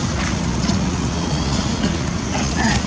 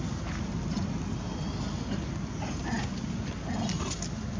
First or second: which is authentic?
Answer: second